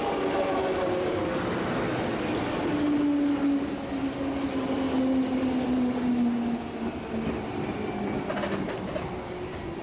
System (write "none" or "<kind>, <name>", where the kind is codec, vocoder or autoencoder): none